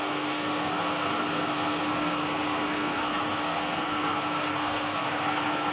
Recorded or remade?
remade